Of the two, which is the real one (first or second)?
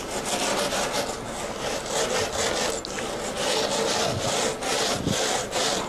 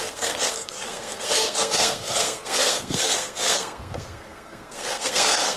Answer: first